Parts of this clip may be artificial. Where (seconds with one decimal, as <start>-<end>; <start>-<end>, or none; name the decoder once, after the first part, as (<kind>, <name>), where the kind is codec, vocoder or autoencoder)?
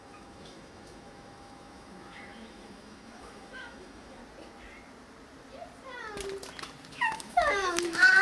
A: 0.0-4.2 (autoencoder, DAC-VAE); 6.9-8.2